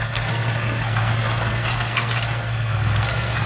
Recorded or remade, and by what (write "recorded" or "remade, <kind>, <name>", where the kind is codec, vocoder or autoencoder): remade, codec, SNAC